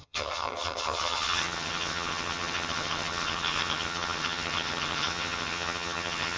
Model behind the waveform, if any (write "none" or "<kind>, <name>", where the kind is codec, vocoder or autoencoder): vocoder, HiFi-GAN